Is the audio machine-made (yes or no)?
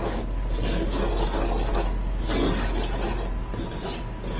no